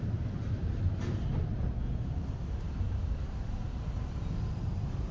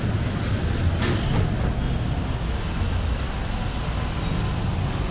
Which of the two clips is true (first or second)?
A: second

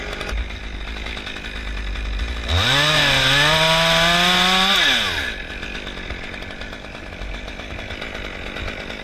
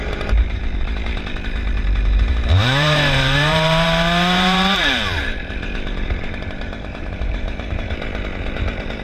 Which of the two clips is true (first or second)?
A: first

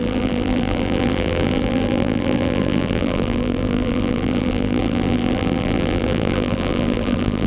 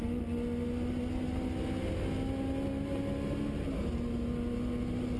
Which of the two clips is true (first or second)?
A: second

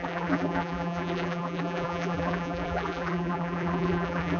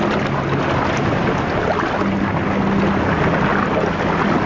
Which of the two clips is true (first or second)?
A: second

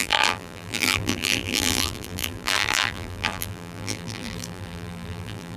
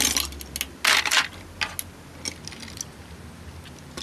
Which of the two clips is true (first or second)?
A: second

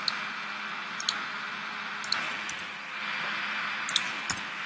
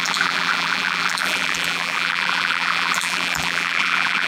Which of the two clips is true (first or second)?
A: first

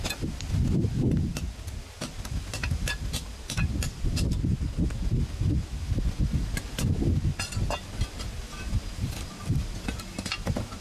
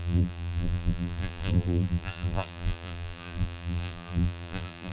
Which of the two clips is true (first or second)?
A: first